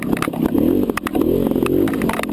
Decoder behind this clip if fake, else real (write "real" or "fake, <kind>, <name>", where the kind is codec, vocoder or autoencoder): real